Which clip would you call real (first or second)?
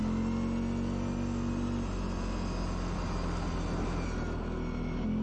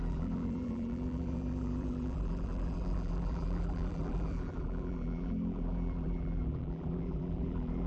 first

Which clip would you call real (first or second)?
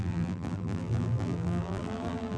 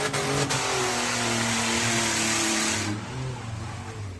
second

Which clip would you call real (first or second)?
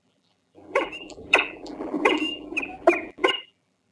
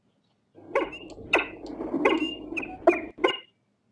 second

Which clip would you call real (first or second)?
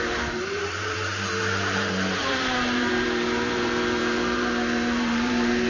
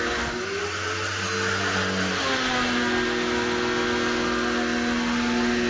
second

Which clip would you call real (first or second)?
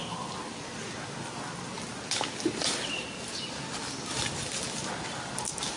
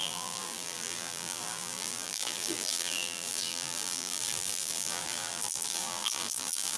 first